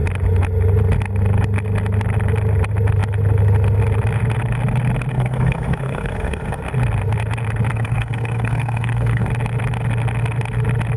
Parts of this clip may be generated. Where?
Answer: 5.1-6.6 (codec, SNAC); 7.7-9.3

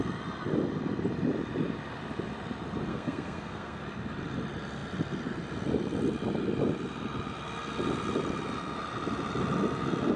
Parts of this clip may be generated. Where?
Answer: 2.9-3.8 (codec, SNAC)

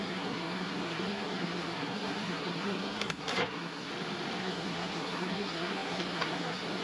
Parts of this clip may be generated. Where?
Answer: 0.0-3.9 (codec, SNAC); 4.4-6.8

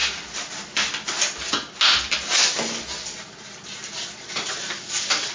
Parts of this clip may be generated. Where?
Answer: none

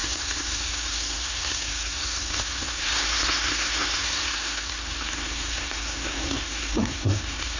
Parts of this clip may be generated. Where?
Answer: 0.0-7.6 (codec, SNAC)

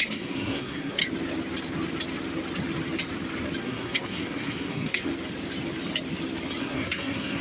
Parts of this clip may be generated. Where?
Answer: 0.0-1.0 (codec, SNAC); 3.6-5.1; 6.6-7.4

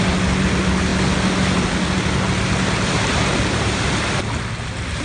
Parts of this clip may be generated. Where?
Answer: none

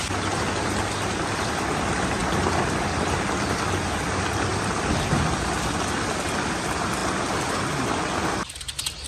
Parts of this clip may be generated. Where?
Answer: none